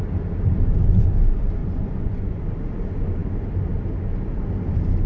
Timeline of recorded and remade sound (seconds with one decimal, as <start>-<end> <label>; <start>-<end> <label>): 0.0-1.6 recorded; 1.6-2.4 remade; 2.4-5.1 recorded